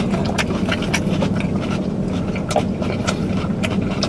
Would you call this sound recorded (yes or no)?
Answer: no